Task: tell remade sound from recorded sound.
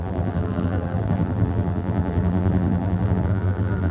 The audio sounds remade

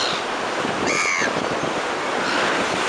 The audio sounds remade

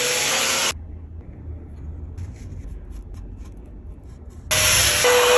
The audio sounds recorded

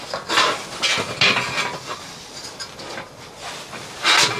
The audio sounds recorded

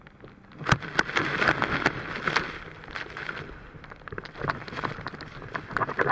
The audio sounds recorded